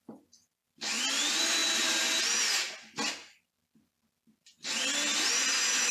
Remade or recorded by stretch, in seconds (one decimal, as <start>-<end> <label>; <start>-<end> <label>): 0.0-5.9 recorded